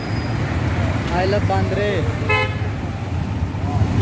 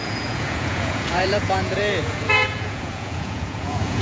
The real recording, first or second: first